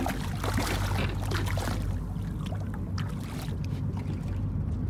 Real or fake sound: real